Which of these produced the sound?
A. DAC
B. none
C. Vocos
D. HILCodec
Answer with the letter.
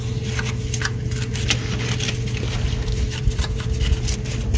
B